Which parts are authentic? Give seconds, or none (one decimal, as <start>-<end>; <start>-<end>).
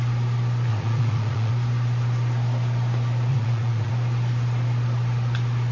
0.0-0.7; 1.5-3.3; 3.9-5.7